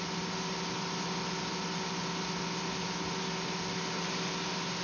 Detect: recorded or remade recorded